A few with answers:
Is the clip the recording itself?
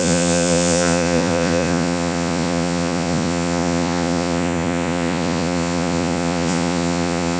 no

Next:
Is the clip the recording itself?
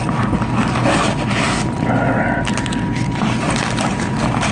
yes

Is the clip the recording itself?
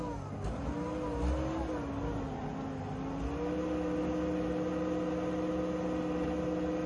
yes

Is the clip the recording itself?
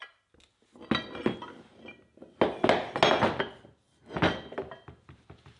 yes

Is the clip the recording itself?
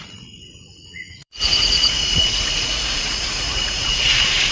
no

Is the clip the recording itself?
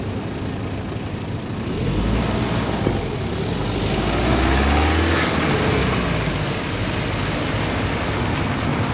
yes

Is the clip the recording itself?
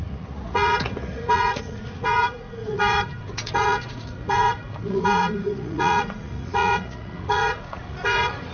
no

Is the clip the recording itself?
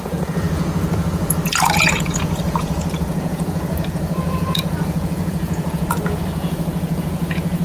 no